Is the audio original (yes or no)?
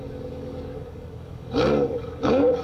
no